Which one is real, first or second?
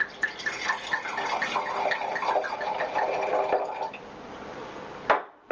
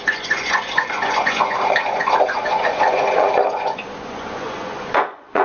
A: first